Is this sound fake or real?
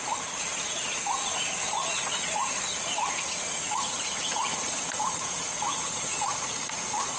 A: fake